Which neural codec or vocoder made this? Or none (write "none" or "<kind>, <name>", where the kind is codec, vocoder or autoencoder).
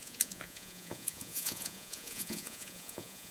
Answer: vocoder, Vocos